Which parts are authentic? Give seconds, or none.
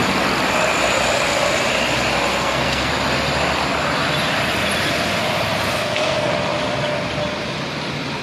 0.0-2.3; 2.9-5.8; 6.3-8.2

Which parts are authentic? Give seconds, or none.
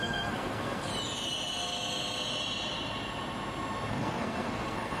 0.9-3.9